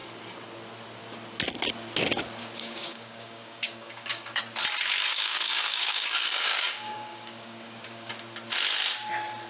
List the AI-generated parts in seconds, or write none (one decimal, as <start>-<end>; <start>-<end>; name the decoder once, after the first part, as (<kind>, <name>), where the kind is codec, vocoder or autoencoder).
2.4-4.4 (codec, DAC); 5.1-8.1